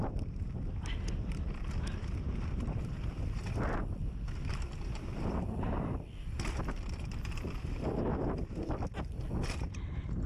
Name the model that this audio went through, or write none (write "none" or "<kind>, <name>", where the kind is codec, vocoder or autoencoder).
vocoder, BigVGAN v2